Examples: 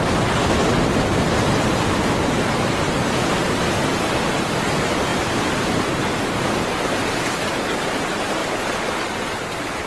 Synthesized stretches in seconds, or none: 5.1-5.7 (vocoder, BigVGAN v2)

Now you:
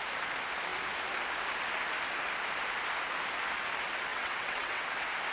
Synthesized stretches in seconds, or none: 4.1-4.8 (vocoder, WaveNeXt)

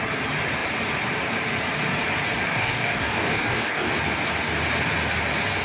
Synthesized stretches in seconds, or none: 2.5-3.9 (codec, DAC)

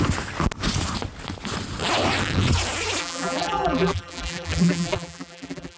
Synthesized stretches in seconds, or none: 3.0-5.8 (vocoder, BigVGAN v2)

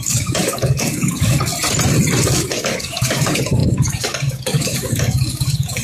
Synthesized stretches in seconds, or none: 0.0-1.5 (codec, DAC); 2.2-5.8

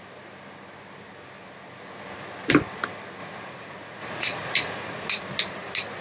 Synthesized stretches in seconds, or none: 3.2-5.1 (vocoder, Vocos)

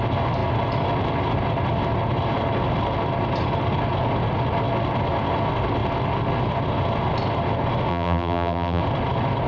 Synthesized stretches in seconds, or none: 7.9-8.8 (vocoder, BigVGAN v2)

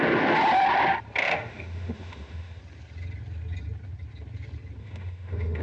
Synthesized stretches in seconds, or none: 1.2-2.6 (autoencoder, DAC-VAE); 4.8-5.6